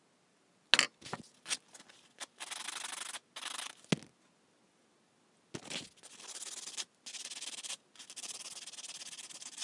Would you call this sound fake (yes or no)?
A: no